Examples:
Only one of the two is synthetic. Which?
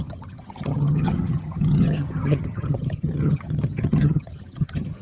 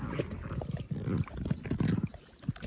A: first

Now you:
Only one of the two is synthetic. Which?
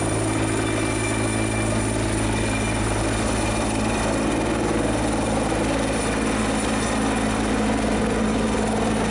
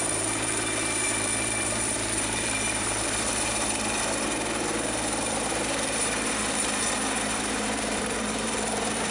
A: second